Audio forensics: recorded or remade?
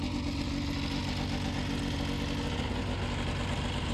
recorded